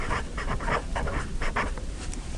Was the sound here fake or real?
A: fake